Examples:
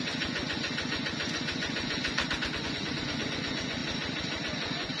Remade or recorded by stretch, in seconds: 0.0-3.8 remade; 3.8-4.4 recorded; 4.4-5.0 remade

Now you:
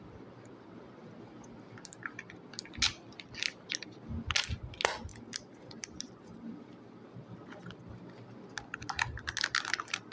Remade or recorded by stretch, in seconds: 0.0-10.1 recorded

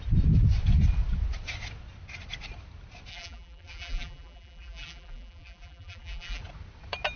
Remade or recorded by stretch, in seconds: 0.0-3.1 recorded; 3.1-6.4 remade; 6.4-7.2 recorded

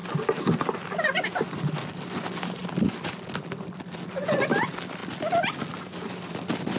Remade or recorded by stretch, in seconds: 0.0-1.9 recorded; 1.9-2.6 remade; 2.6-3.1 recorded; 3.1-5.0 remade; 5.0-5.6 recorded; 5.6-6.8 remade